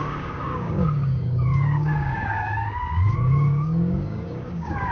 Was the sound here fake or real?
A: fake